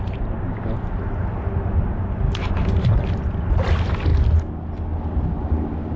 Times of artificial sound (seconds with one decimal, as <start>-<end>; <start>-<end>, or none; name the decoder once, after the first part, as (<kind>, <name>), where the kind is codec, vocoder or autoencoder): none